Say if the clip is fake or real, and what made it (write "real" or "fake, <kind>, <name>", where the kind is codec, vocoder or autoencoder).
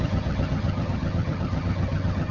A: fake, vocoder, HiFi-GAN